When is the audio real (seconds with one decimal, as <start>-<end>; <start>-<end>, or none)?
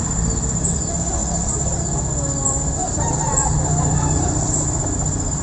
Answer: 0.0-5.4